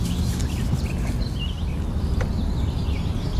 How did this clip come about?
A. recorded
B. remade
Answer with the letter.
A